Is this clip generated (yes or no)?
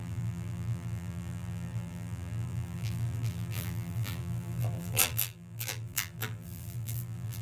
yes